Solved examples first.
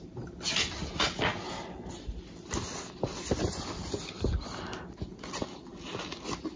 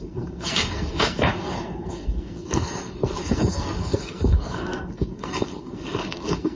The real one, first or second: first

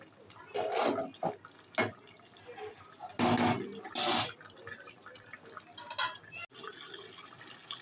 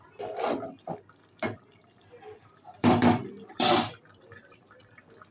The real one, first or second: first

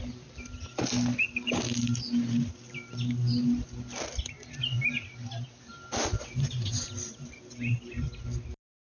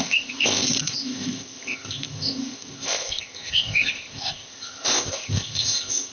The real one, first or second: first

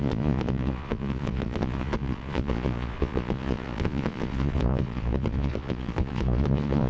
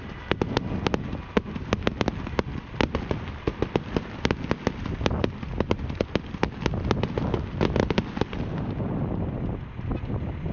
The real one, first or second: second